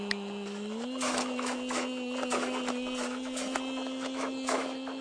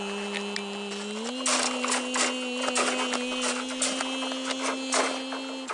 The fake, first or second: first